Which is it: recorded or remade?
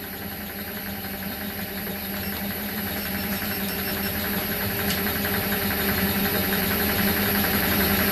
remade